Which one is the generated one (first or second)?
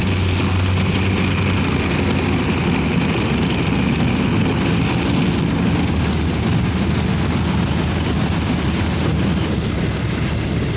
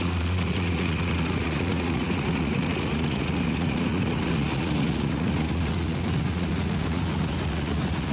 second